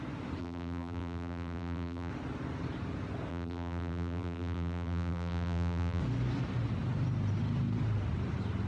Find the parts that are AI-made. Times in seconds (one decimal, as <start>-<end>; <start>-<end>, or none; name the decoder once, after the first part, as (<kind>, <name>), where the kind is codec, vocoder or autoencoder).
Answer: 0.4-2.1 (vocoder, BigVGAN v2); 3.3-6.0